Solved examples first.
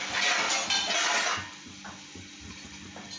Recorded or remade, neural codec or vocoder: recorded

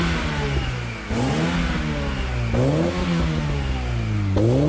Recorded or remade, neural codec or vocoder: recorded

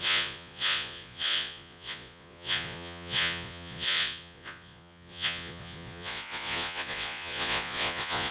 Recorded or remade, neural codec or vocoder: remade, vocoder, Vocos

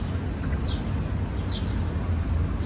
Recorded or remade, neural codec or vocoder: recorded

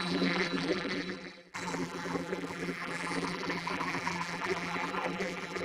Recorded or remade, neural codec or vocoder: remade, vocoder, BigVGAN v2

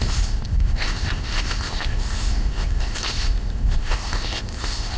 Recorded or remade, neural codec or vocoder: remade, codec, ZipCodec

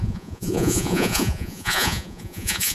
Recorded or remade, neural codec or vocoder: remade, vocoder, Vocos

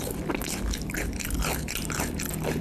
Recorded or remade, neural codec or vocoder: recorded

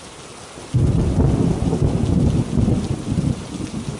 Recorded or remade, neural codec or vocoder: recorded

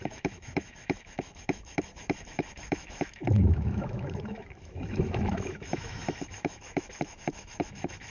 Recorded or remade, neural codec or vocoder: remade, autoencoder, DAC-VAE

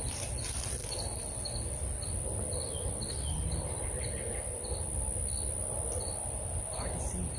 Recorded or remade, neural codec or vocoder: recorded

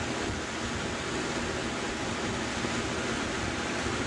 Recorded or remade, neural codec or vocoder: recorded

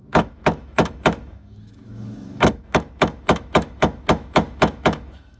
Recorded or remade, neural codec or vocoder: remade, autoencoder, DAC-VAE